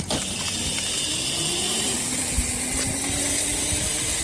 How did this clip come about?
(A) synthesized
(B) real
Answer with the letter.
B